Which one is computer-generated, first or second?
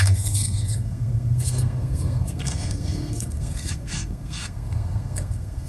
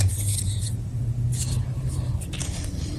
first